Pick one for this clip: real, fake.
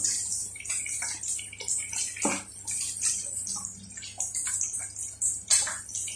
real